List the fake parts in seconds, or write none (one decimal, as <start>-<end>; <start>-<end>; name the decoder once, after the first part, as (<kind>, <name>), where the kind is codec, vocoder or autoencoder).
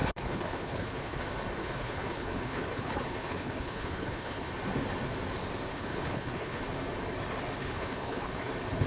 0.0-1.2 (codec, HILCodec); 1.6-4.5; 5.7-6.6; 7.6-8.5